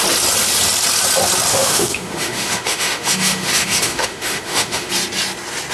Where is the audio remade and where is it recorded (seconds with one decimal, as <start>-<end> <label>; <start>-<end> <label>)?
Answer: 0.0-1.5 recorded; 1.5-4.9 remade; 4.9-5.7 recorded